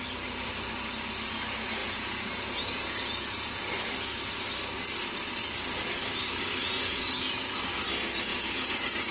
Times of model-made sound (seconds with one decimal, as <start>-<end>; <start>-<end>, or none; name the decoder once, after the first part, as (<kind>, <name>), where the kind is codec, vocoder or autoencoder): 1.8-3.6 (vocoder, Vocos); 6.6-7.5; 8.3-9.1